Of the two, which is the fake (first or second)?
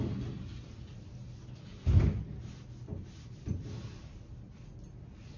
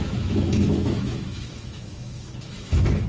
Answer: second